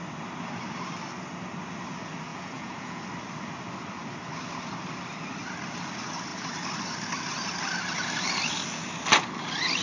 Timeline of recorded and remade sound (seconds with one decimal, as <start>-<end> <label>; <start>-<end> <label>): 0.0-2.3 recorded; 2.3-3.0 remade; 3.0-9.8 recorded